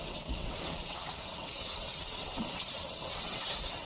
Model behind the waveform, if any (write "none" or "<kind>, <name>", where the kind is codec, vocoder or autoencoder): vocoder, WaveNeXt